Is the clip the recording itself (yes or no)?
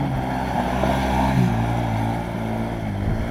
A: yes